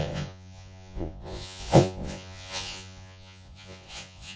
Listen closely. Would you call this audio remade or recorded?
remade